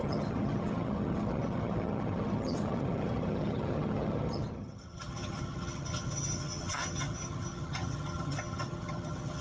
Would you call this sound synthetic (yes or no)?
yes